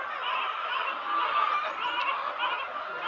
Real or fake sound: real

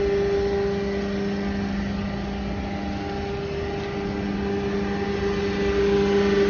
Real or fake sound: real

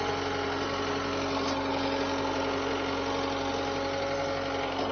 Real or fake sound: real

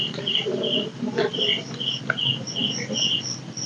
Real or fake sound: real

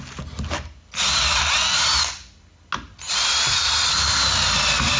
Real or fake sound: real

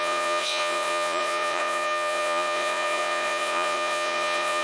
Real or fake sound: fake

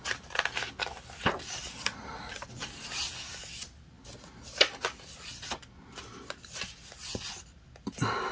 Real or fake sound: real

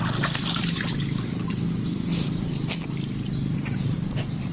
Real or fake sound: real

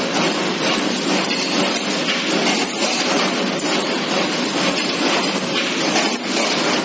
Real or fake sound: real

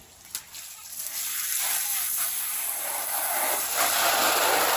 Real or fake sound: real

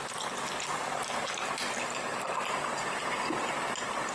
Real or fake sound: real